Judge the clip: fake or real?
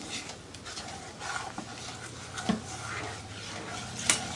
real